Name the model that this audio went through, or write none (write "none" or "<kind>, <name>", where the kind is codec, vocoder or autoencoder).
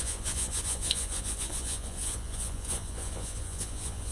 vocoder, Vocos